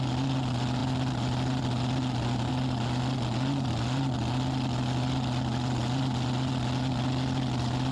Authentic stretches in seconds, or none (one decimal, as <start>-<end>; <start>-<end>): 0.0-7.9